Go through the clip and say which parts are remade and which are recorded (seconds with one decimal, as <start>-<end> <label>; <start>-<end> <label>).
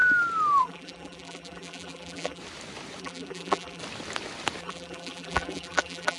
0.0-0.6 recorded; 0.6-2.4 remade; 2.4-3.0 recorded; 3.0-3.8 remade; 3.8-4.6 recorded; 4.6-6.2 remade